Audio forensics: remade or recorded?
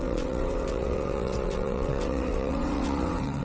remade